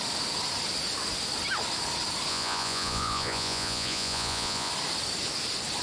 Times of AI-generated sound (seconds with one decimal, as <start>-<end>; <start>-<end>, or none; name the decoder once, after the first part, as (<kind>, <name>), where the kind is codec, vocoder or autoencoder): 2.3-4.7 (vocoder, Vocos)